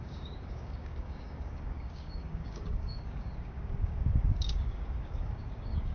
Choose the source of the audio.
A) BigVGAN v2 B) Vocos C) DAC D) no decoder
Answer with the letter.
C